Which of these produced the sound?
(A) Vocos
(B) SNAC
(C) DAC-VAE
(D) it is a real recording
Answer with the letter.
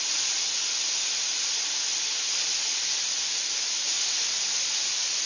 D